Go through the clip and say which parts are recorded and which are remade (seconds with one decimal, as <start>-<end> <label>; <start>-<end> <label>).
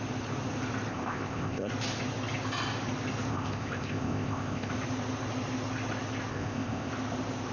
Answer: 0.0-0.9 recorded; 0.9-1.7 remade; 1.7-3.3 recorded; 3.3-4.7 remade; 4.7-6.3 recorded; 6.3-6.9 remade; 6.9-7.5 recorded